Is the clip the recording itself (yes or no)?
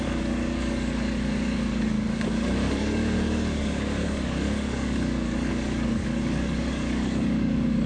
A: no